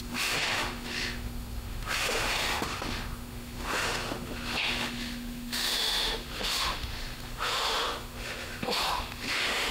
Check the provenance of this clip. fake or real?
fake